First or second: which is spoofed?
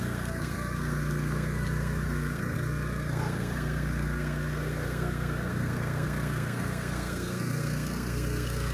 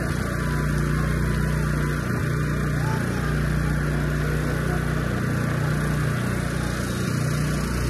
first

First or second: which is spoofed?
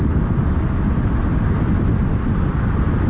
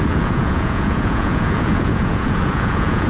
second